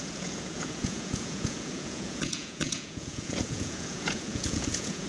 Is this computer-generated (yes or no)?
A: yes